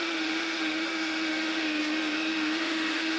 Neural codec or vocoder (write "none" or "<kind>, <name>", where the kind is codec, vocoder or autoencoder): autoencoder, DAC-VAE